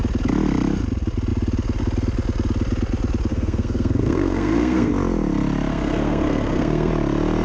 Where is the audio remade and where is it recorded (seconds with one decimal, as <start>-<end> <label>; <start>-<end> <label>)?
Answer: 0.0-3.3 recorded; 3.3-4.9 remade; 4.9-5.7 recorded; 5.7-6.9 remade; 6.9-7.4 recorded